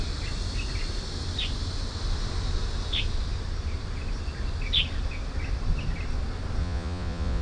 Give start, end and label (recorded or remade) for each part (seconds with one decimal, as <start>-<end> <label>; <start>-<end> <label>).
0.0-6.6 recorded; 6.6-7.4 remade